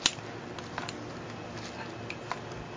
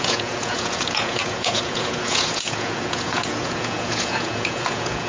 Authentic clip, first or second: first